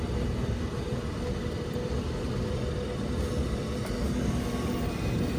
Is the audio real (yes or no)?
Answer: yes